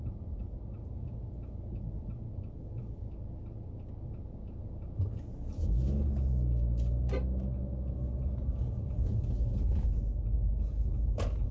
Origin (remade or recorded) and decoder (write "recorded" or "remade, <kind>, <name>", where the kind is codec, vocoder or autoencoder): recorded